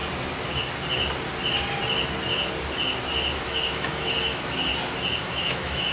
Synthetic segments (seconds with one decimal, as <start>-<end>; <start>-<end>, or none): 3.4-4.7; 5.2-5.9